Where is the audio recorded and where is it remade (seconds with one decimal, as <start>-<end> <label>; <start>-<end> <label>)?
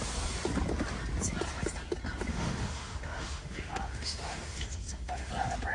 0.0-2.3 recorded; 2.3-5.3 remade; 5.3-5.7 recorded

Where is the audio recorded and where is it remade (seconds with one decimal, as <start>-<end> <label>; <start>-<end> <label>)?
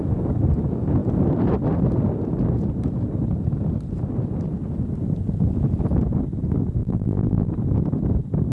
0.0-6.8 recorded; 6.8-7.5 remade; 7.5-8.5 recorded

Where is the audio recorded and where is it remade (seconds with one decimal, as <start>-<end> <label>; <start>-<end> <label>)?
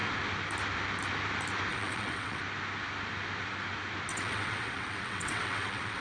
0.0-1.7 recorded; 1.7-2.4 remade; 2.4-4.1 recorded; 4.1-6.0 remade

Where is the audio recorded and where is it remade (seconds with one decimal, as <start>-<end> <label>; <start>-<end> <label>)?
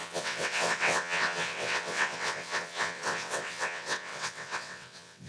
0.0-5.3 remade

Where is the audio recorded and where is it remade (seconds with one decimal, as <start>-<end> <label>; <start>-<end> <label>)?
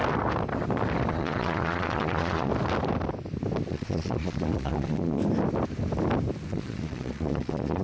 0.0-1.1 recorded; 1.1-2.5 remade; 2.5-3.7 recorded; 3.7-5.2 remade; 5.2-6.5 recorded; 6.5-7.8 remade